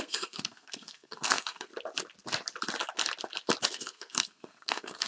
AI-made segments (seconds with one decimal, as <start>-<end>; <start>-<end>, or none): 0.0-1.7; 3.7-5.1